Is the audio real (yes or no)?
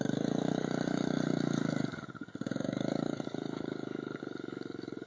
no